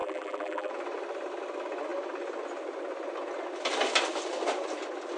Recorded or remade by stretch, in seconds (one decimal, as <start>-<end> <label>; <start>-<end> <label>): 0.0-0.7 remade; 0.7-5.2 recorded

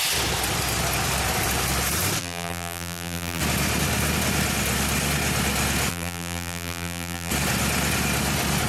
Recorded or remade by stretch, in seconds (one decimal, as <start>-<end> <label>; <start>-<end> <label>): 0.0-2.2 recorded; 2.2-3.4 remade; 3.4-5.9 recorded; 5.9-7.3 remade; 7.3-8.7 recorded

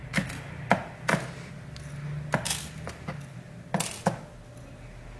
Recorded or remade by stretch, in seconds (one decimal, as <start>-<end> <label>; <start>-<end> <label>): 0.0-5.2 recorded

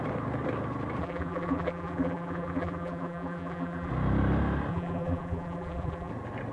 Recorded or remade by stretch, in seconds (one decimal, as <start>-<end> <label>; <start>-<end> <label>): 0.0-1.0 recorded; 1.0-3.9 remade; 3.9-4.7 recorded; 4.7-6.1 remade; 6.1-6.5 recorded